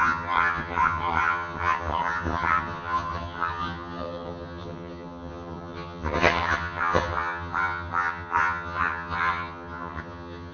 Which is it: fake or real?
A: fake